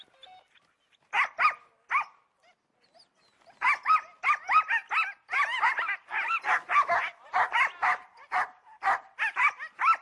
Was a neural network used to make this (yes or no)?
no